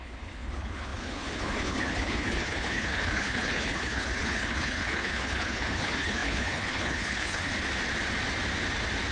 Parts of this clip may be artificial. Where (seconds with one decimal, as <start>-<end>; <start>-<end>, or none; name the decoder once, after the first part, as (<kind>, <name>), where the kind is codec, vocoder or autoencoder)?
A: 0.0-7.5 (codec, HILCodec)